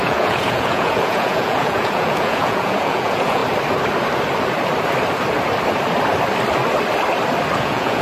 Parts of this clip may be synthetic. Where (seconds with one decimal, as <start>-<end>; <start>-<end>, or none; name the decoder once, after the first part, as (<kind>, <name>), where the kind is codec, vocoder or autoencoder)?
0.0-3.4 (vocoder, Vocos); 7.6-8.0